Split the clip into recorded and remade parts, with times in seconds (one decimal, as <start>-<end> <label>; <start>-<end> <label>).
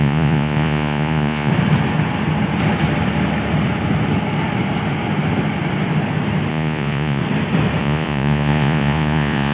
0.0-1.5 remade; 1.5-6.5 recorded; 6.5-7.2 remade; 7.2-7.8 recorded; 7.8-9.5 remade